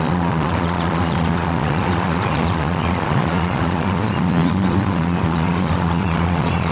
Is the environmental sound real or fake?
fake